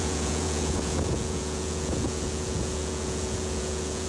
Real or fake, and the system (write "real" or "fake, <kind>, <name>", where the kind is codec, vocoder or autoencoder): fake, vocoder, Vocos